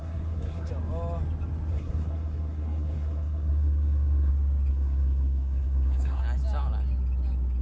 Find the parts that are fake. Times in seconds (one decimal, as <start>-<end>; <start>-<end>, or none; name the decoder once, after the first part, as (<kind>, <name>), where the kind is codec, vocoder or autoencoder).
0.0-0.7 (codec, SNAC); 1.7-4.3; 4.7-6.2